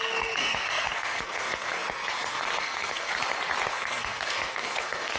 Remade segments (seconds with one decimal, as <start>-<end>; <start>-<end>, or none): 0.0-3.1; 3.7-5.2